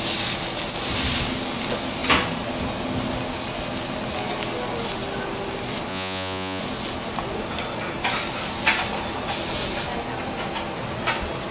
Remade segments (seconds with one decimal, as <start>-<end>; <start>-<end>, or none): 5.9-6.6